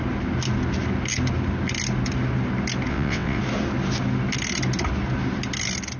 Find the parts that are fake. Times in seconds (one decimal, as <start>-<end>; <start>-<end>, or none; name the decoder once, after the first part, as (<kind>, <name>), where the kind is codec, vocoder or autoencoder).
2.9-3.4 (vocoder, WaveNeXt)